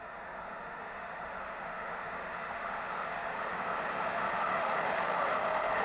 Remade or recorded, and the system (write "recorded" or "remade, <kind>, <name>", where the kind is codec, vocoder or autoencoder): remade, autoencoder, DAC-VAE